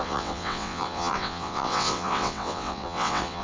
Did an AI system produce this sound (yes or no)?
yes